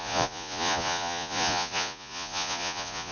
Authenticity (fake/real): fake